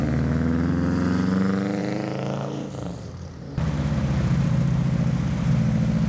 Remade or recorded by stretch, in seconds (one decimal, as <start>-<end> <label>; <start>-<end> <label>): 0.0-1.8 recorded; 1.8-5.5 remade; 5.5-6.1 recorded